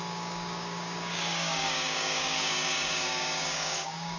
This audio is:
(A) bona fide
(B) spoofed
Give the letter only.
B